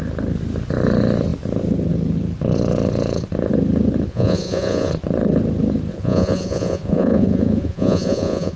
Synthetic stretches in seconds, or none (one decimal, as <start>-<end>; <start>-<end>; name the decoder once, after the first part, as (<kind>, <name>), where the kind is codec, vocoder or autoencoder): 4.1-4.9 (vocoder, Vocos); 5.9-8.6